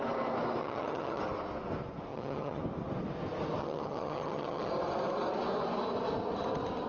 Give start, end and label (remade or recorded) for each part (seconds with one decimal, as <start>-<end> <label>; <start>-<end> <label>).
0.0-0.6 recorded; 0.6-1.2 remade; 1.2-2.1 recorded; 2.1-2.6 remade; 2.6-3.6 recorded; 3.6-4.7 remade; 4.7-6.9 recorded